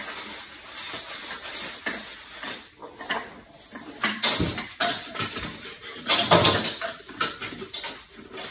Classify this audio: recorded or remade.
recorded